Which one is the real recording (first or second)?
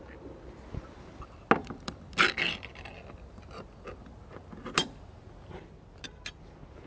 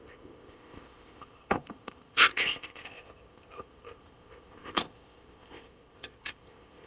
first